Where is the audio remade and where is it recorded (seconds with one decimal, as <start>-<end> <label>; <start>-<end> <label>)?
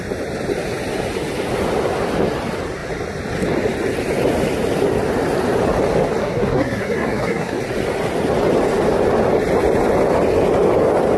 0.0-6.2 recorded; 6.2-7.6 remade; 7.6-11.2 recorded